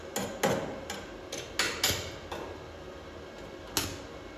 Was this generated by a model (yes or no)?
no